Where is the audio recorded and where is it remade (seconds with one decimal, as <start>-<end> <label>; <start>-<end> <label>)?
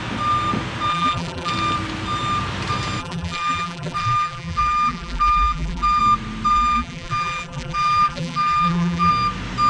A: 0.0-0.9 recorded; 0.9-1.5 remade; 1.5-3.0 recorded; 3.0-6.0 remade; 6.0-6.5 recorded; 6.5-9.1 remade; 9.1-9.7 recorded